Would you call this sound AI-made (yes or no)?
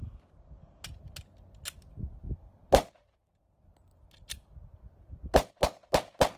no